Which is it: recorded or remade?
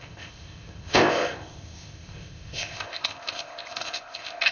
remade